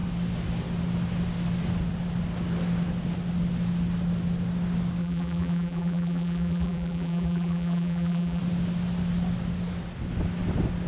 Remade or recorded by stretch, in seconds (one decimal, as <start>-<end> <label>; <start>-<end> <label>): 0.0-5.0 recorded; 5.0-8.4 remade; 8.4-10.9 recorded